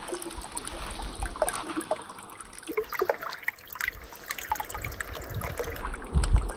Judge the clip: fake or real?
real